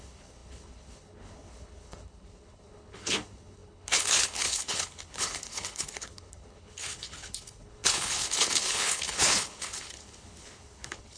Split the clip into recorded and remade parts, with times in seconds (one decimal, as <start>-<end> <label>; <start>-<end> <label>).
0.0-11.2 remade